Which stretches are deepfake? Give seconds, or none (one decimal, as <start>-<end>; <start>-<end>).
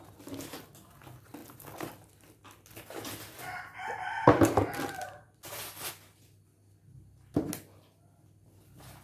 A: none